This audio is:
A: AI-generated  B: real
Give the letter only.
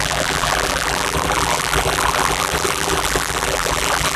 A